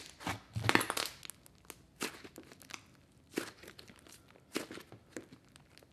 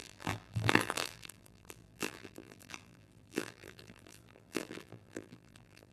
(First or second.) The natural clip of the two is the first